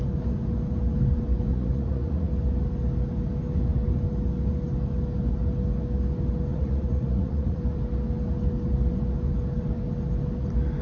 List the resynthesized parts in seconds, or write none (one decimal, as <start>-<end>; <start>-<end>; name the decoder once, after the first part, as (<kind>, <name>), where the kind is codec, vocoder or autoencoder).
1.5-2.3 (vocoder, Vocos); 6.5-7.6